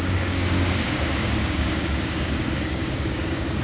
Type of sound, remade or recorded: remade